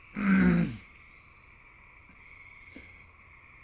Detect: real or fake real